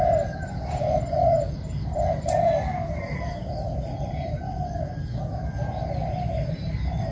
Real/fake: real